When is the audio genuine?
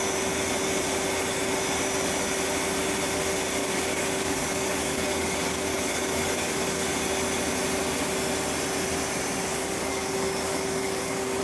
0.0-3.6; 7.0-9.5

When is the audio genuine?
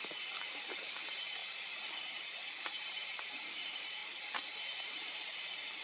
4.0-4.6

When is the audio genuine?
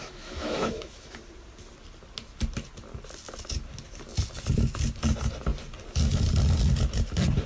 1.1-7.5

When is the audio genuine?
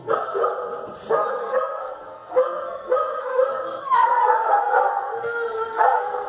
0.4-1.1